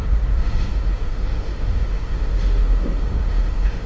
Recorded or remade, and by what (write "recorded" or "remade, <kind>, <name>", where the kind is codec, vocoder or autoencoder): remade, autoencoder, DAC-VAE